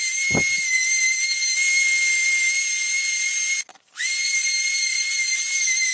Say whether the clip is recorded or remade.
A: recorded